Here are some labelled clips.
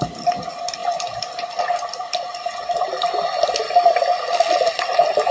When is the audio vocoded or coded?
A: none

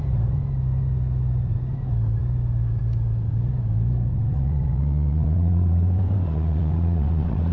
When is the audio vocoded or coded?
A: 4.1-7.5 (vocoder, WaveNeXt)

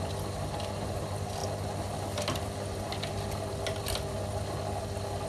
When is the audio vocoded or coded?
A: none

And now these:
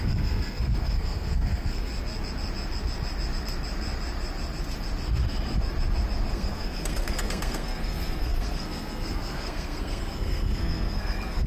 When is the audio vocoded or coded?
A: 0.0-1.9 (codec, SNAC); 6.3-11.5

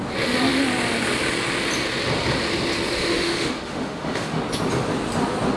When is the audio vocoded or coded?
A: 3.0-4.4 (autoencoder, DAC-VAE)

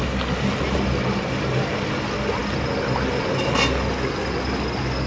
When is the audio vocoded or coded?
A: none

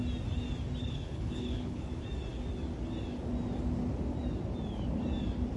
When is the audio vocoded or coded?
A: 0.8-1.9 (codec, HILCodec)

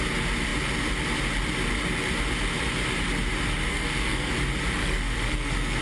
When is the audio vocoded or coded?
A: 3.7-4.3 (codec, SNAC); 4.8-5.8